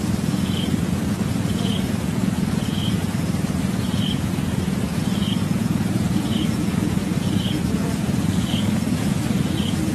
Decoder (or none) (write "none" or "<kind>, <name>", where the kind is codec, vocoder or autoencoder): vocoder, Vocos